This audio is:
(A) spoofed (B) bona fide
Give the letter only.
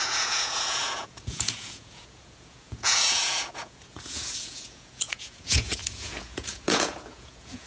A